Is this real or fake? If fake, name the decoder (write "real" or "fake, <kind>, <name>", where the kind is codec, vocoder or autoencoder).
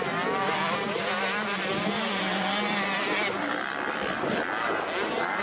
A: real